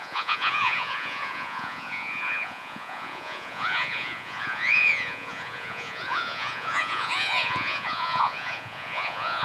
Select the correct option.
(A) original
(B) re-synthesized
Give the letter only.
B